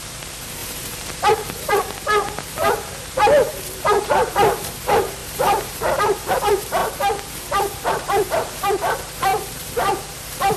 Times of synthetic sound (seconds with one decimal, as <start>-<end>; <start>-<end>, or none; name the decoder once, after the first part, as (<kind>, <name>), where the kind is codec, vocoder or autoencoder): 0.0-6.8 (vocoder, BigVGAN v2); 7.4-10.6